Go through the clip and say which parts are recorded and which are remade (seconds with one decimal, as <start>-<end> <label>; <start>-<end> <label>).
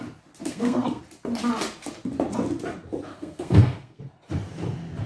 0.0-0.4 recorded; 0.4-1.0 remade; 1.0-3.1 recorded; 3.1-4.0 remade; 4.0-5.1 recorded